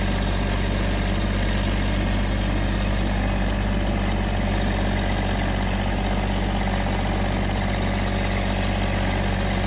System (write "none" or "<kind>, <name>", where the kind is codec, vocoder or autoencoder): none